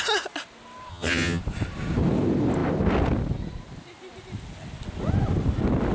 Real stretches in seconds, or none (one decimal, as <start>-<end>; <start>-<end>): 0.0-0.9; 1.4-5.9